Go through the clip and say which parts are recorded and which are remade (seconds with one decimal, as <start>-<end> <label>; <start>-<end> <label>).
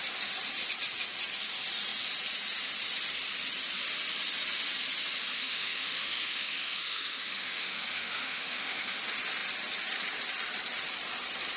0.0-5.3 recorded; 5.3-9.0 remade; 9.0-11.6 recorded